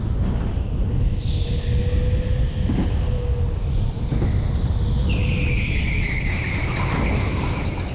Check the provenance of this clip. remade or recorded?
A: recorded